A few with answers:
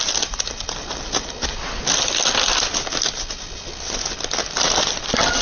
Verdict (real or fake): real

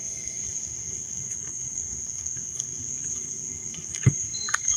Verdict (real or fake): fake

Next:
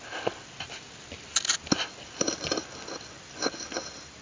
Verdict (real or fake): real